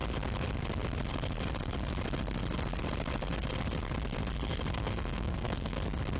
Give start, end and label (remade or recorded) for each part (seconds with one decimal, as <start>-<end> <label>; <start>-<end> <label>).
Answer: 0.0-4.7 recorded; 4.7-5.8 remade; 5.8-6.2 recorded